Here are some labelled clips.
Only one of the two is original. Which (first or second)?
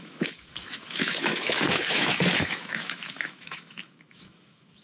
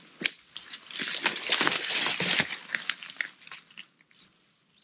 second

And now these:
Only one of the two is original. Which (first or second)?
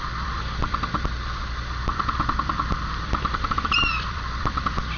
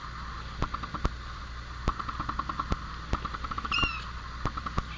second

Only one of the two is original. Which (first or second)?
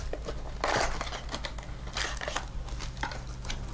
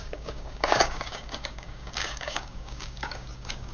first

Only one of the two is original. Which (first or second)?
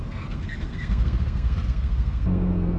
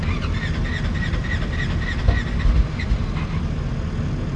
second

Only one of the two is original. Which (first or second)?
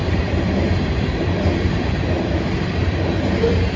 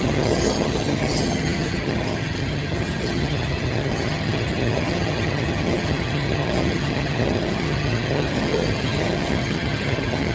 first